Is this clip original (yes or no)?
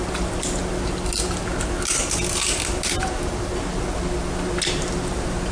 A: yes